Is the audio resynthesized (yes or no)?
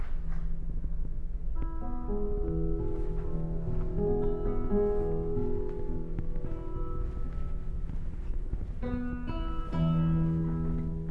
no